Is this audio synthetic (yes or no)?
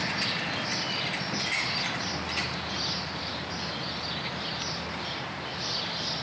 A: no